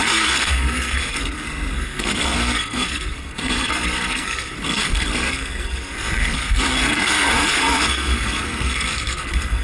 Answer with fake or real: fake